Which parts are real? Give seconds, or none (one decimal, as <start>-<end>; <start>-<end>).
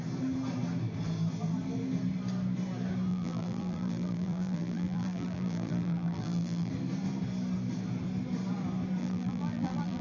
0.0-3.1; 6.7-9.0